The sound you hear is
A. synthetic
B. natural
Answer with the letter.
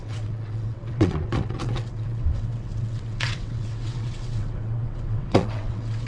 A